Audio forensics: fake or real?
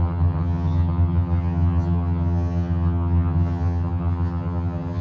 fake